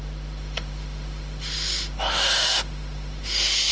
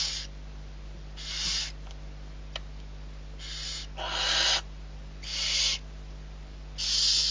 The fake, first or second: first